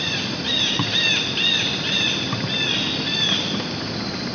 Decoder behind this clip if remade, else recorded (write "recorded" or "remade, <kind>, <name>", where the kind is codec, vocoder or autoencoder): recorded